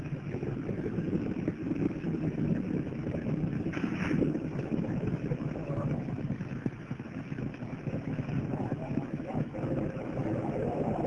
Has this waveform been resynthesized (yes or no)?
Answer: yes